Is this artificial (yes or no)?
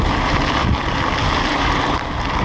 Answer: no